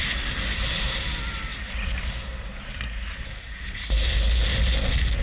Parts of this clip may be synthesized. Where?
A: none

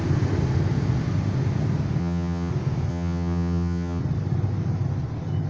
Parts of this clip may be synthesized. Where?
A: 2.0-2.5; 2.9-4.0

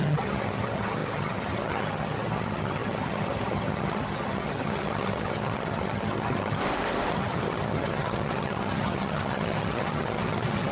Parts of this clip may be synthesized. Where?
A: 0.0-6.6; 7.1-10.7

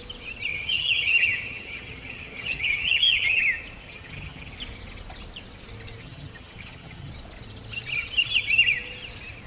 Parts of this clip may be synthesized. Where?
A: 0.5-3.4; 3.8-4.5; 6.0-7.1

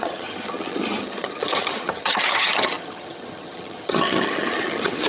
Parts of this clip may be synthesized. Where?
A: 0.0-5.1